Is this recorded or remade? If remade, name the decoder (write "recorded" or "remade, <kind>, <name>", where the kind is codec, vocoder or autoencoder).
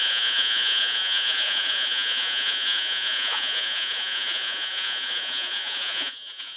remade, vocoder, Vocos